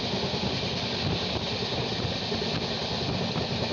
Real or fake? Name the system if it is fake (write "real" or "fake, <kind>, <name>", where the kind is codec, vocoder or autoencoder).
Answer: real